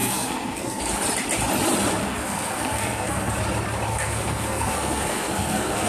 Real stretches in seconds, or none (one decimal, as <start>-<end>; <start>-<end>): 0.8-2.0; 3.3-3.9